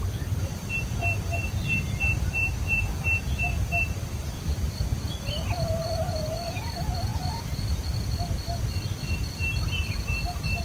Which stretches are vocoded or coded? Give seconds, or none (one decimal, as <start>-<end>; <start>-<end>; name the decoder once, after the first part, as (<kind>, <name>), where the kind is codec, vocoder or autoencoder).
none